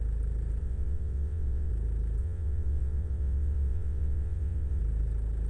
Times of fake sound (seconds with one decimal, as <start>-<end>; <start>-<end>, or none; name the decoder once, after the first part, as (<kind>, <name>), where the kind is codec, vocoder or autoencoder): 0.6-1.7 (vocoder, WaveNeXt); 2.2-4.8